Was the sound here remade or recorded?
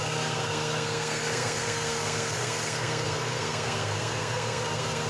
remade